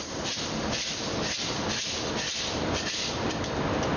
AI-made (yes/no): no